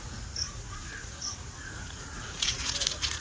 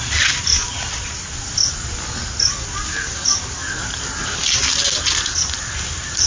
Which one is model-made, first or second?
first